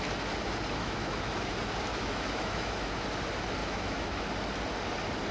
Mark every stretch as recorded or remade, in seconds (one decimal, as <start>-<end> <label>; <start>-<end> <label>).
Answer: 0.0-0.8 recorded; 0.8-1.5 remade; 1.5-1.9 recorded; 1.9-2.9 remade; 2.9-3.6 recorded; 3.6-4.2 remade; 4.2-5.3 recorded